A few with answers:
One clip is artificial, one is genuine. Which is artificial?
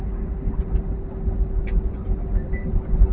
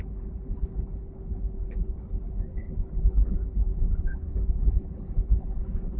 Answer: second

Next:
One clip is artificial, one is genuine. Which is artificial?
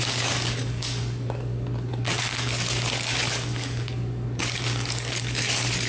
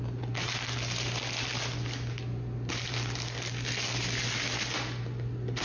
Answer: first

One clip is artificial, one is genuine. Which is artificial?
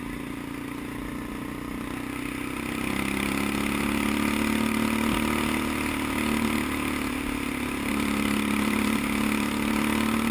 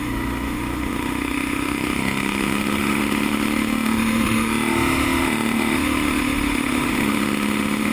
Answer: second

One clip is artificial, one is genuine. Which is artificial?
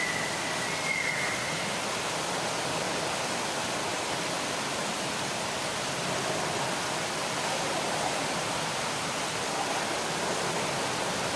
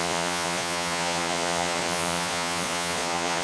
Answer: second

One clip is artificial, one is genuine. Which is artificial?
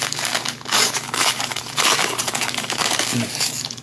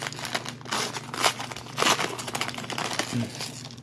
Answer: first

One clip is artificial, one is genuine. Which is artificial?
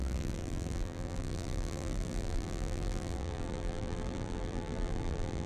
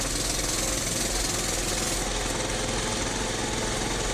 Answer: first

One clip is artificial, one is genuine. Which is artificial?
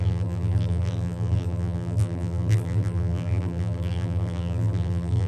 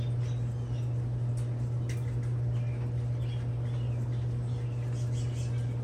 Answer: first